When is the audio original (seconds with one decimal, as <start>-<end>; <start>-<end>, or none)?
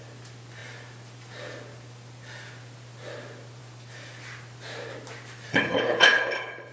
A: 0.0-5.5